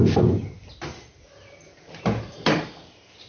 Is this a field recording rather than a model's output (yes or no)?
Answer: yes